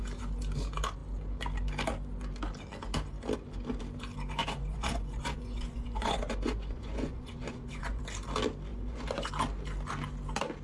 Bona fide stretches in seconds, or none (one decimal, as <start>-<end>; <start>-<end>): 0.0-4.4; 8.0-8.7; 9.3-10.6